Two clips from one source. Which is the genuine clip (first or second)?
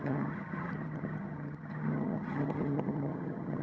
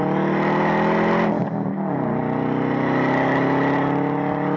second